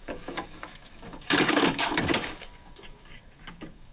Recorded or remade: remade